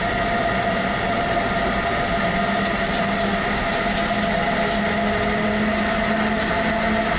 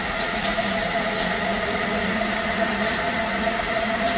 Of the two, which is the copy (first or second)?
second